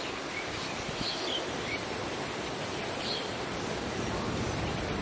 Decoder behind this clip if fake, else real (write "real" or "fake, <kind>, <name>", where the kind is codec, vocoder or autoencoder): fake, vocoder, BigVGAN v2